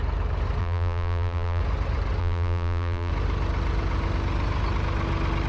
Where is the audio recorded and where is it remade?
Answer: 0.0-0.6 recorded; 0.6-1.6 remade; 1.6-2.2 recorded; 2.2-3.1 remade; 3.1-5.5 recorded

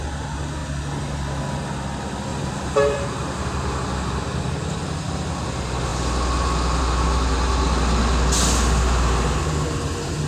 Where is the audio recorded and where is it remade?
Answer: 0.0-2.3 recorded; 2.3-3.4 remade; 3.4-10.3 recorded

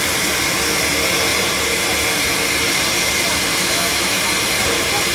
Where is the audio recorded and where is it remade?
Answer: 0.0-3.5 recorded; 3.5-4.2 remade; 4.2-5.1 recorded

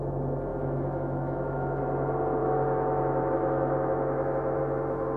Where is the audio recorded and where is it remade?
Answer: 0.0-0.5 recorded; 0.5-1.8 remade; 1.8-2.4 recorded; 2.4-4.6 remade; 4.6-5.2 recorded

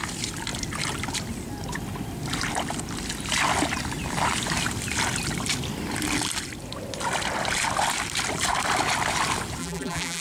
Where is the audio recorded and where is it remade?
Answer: 0.0-9.6 recorded; 9.6-10.2 remade